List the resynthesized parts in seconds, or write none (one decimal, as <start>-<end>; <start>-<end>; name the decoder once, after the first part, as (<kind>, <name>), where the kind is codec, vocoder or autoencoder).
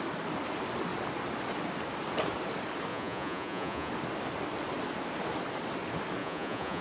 2.9-3.9 (vocoder, Vocos); 6.2-6.8